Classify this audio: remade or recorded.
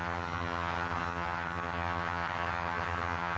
remade